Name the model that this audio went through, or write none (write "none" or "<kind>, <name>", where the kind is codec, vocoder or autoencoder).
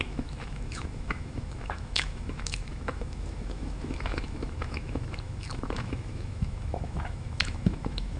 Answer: autoencoder, DAC-VAE